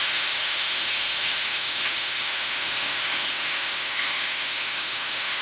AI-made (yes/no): yes